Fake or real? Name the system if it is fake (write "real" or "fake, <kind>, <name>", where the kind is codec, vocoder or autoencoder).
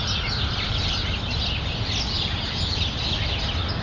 real